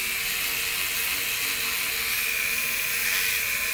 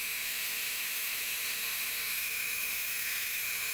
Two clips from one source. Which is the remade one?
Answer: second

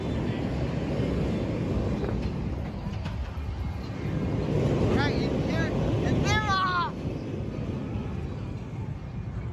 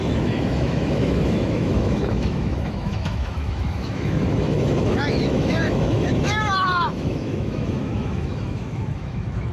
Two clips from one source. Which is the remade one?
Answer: second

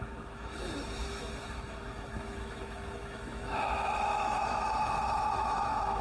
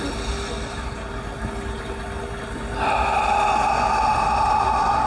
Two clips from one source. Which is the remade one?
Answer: first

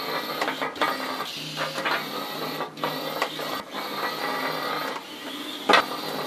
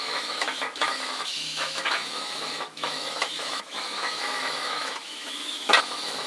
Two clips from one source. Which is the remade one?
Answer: second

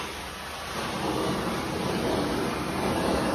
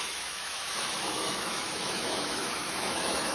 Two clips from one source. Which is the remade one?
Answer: second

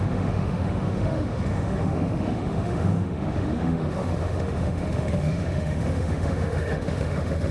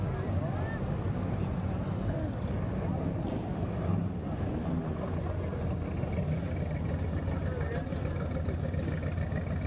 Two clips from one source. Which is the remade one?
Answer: first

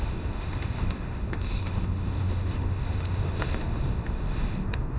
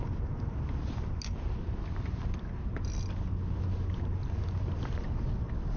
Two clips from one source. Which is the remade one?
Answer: first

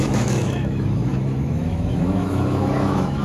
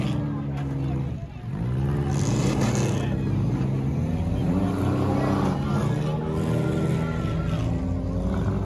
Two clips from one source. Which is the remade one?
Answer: first